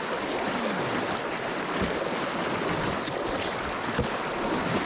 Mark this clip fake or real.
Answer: real